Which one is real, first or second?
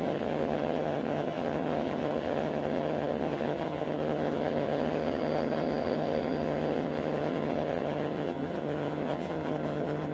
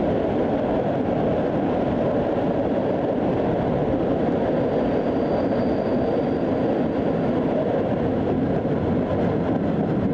second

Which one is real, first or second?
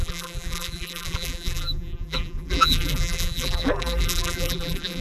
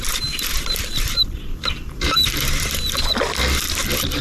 second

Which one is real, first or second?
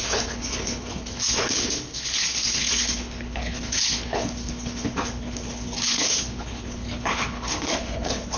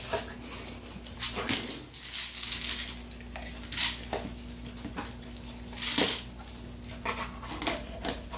second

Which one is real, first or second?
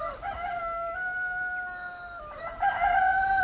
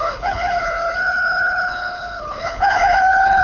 first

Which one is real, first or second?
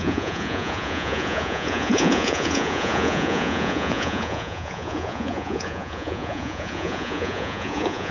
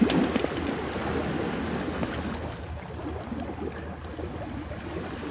second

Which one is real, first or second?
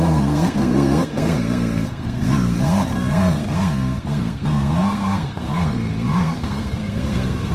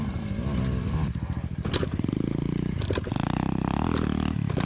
second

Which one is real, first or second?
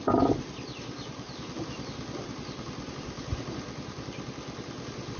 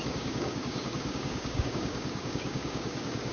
first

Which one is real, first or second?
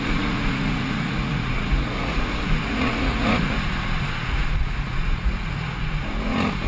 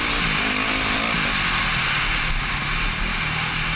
second